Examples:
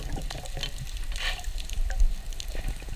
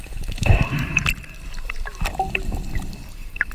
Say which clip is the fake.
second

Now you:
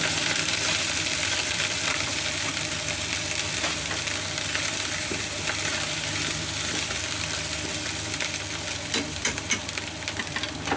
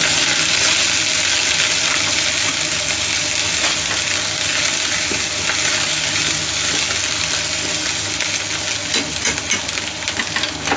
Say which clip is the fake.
first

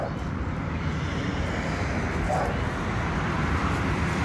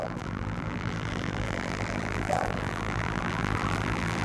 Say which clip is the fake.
second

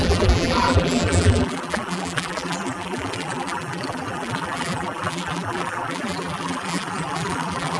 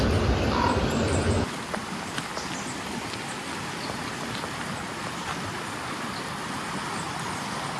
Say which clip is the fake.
first